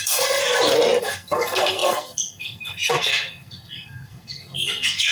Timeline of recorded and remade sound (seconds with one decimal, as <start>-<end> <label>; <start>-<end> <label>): 0.0-0.4 remade; 0.4-1.0 recorded; 1.0-5.1 remade